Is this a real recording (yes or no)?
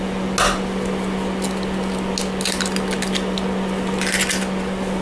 yes